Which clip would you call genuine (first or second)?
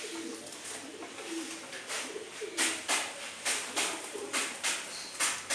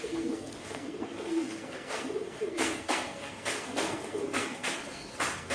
first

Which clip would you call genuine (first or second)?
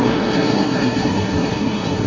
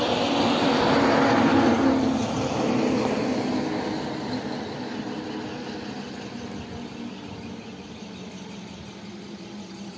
second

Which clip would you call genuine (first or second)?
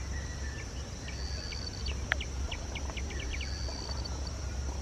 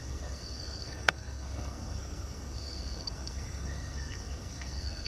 first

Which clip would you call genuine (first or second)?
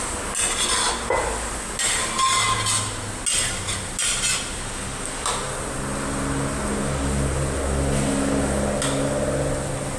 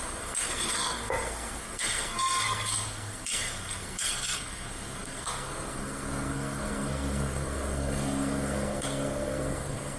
first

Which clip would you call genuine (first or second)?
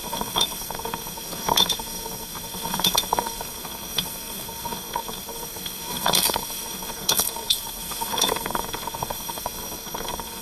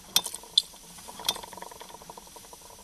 second